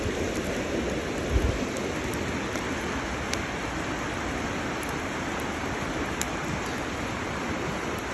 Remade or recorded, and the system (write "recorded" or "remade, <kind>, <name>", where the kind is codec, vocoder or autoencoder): recorded